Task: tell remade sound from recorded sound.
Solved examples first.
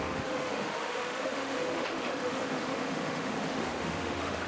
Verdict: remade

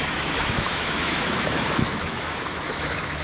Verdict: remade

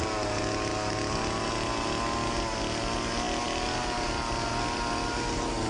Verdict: recorded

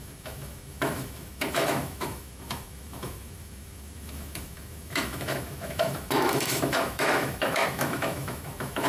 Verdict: remade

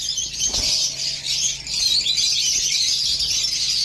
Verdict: recorded